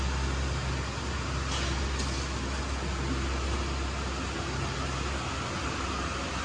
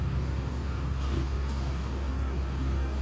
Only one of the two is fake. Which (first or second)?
second